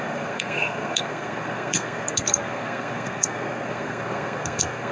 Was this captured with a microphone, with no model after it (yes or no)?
no